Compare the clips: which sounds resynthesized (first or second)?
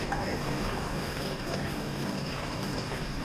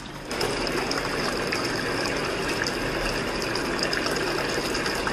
first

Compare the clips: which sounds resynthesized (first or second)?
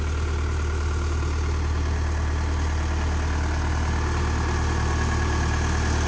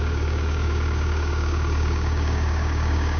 second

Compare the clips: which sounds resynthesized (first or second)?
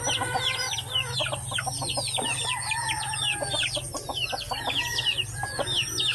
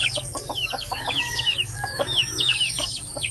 second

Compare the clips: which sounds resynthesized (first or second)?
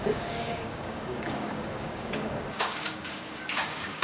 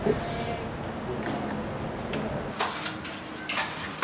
first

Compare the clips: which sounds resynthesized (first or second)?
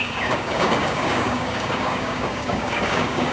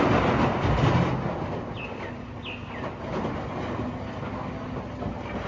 first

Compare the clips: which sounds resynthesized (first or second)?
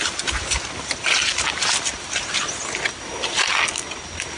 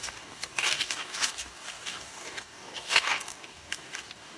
second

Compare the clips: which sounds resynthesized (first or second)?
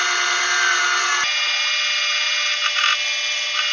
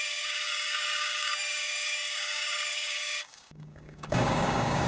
second